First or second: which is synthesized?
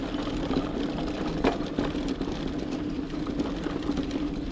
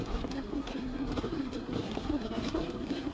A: second